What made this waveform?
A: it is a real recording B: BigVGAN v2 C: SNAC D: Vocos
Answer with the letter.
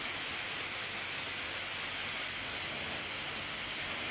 A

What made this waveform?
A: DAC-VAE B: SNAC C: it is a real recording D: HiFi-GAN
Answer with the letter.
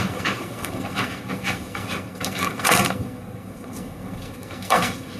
B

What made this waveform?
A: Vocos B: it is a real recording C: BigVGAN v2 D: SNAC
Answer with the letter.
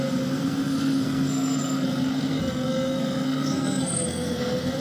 D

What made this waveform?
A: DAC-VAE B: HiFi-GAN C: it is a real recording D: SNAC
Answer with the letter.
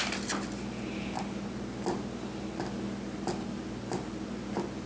C